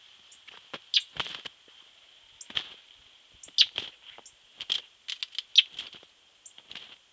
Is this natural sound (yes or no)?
yes